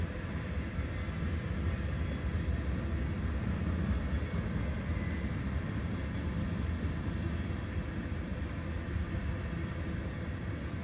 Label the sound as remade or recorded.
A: recorded